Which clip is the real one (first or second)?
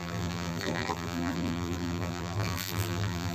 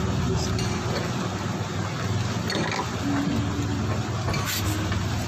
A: second